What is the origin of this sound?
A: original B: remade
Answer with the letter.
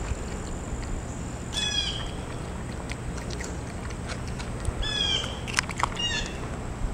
A